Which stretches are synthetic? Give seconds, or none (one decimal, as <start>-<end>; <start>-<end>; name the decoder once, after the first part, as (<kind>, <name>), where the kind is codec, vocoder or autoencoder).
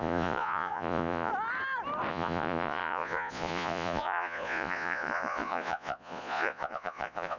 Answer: 0.0-1.3 (vocoder, Vocos); 2.1-7.4